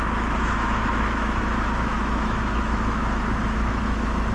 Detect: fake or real fake